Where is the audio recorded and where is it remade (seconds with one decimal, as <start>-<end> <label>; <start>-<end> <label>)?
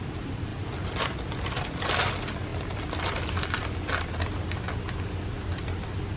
0.0-6.2 recorded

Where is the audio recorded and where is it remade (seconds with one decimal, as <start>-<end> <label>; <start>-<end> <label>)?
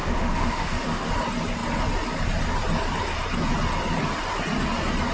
0.0-1.1 remade; 1.1-5.1 recorded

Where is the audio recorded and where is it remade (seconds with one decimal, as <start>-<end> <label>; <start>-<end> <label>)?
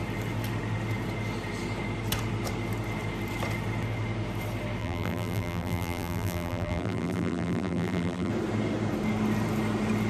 0.0-4.8 recorded; 4.8-8.3 remade; 8.3-10.1 recorded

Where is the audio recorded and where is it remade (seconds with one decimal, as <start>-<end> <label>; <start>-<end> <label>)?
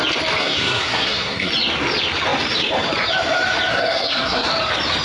0.0-0.4 recorded; 0.4-1.5 remade; 1.5-3.7 recorded; 3.7-4.5 remade; 4.5-5.0 recorded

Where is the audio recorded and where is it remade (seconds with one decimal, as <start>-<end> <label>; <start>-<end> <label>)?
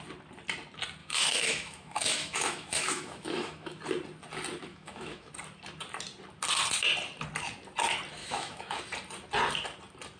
0.0-1.0 recorded; 1.0-3.8 remade; 3.8-4.7 recorded; 4.7-5.3 remade; 5.3-8.2 recorded; 8.2-8.8 remade; 8.8-10.2 recorded